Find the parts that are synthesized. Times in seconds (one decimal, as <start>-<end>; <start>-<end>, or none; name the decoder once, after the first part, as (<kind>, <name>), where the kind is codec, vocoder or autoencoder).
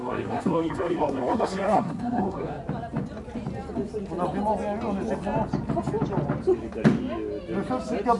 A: 0.0-2.6 (codec, SNAC)